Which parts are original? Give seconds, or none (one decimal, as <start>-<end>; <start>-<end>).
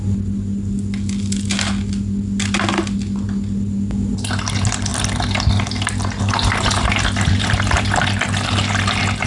0.0-9.3